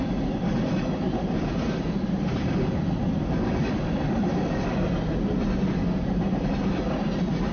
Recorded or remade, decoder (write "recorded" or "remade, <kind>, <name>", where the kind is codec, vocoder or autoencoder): recorded